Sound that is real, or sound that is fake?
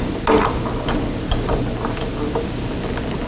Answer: real